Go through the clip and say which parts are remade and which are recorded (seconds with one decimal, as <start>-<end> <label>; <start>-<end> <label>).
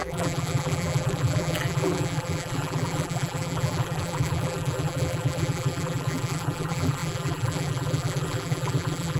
0.0-9.2 remade